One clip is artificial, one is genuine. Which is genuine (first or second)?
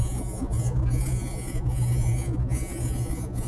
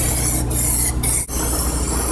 second